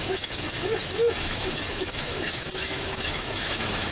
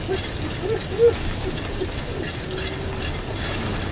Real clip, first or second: second